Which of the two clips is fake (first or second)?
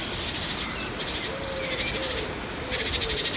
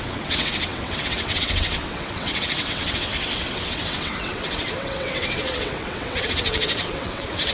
second